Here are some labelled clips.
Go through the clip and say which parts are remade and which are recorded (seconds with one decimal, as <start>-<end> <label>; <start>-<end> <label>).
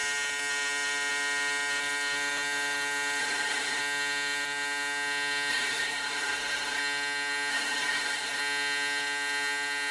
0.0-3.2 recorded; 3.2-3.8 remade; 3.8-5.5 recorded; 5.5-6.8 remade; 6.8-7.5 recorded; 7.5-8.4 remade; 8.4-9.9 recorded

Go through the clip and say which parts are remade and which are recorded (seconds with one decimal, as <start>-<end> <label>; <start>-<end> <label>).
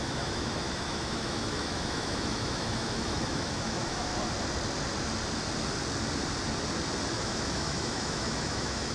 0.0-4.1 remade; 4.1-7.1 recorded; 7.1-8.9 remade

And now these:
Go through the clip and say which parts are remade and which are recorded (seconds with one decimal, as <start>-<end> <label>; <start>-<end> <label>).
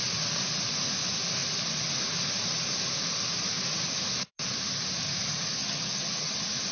0.0-5.6 recorded; 5.6-6.3 remade; 6.3-6.7 recorded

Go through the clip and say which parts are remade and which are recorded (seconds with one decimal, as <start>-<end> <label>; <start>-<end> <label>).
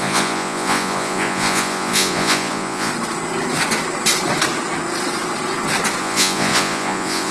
0.0-2.9 remade; 2.9-6.0 recorded; 6.0-7.3 remade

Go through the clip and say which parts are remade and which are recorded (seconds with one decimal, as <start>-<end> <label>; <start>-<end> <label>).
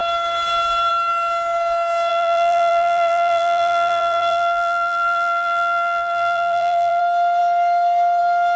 0.0-2.1 recorded; 2.1-7.0 remade; 7.0-8.6 recorded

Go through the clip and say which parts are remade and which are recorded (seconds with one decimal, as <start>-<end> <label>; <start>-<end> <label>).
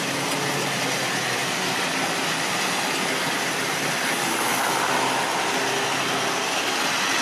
0.0-7.2 recorded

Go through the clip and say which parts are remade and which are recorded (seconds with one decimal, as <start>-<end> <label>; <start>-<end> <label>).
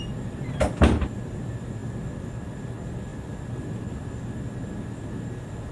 0.0-5.7 recorded